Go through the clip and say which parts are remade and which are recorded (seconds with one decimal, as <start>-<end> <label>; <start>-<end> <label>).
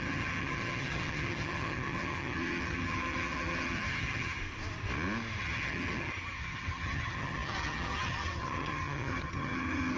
0.0-4.4 remade; 4.4-5.4 recorded; 5.4-10.0 remade